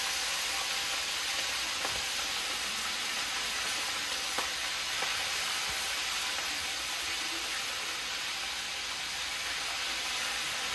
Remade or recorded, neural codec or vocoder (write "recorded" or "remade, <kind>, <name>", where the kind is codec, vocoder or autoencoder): recorded